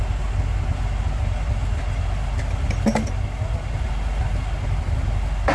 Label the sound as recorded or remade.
recorded